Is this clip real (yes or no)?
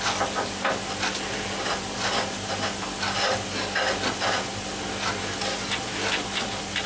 yes